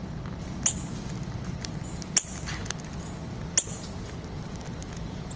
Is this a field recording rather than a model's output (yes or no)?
yes